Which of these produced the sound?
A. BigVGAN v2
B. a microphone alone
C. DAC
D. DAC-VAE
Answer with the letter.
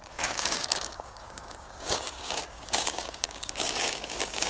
C